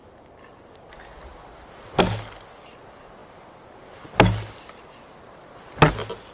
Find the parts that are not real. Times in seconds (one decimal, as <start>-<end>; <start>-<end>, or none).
none